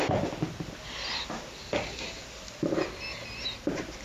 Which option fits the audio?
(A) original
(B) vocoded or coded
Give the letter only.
A